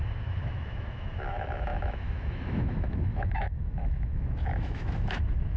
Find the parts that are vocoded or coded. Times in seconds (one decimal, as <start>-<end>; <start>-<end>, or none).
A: 0.0-5.6